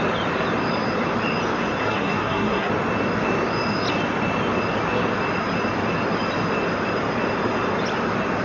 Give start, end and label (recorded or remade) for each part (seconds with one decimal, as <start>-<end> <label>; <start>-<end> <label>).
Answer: 0.0-1.8 recorded; 1.8-2.7 remade; 2.7-8.4 recorded